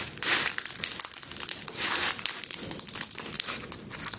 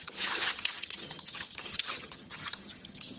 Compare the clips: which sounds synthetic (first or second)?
second